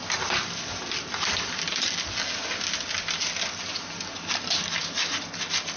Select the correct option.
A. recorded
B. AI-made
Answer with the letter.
A